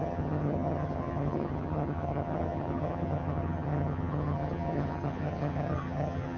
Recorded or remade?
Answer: remade